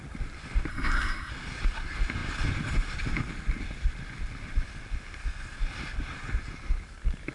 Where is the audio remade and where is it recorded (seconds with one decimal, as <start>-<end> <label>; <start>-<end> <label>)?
0.0-0.7 recorded; 0.7-1.3 remade; 1.3-7.3 recorded